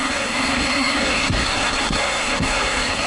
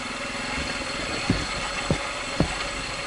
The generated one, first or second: first